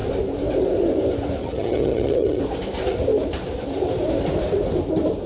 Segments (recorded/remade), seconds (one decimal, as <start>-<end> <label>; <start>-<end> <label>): 0.0-1.4 recorded; 1.4-2.4 remade; 2.4-5.3 recorded